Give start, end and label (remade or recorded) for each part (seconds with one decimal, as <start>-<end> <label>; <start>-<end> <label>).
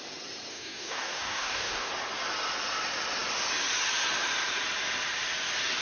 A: 0.0-0.5 recorded; 0.5-1.9 remade; 1.9-5.8 recorded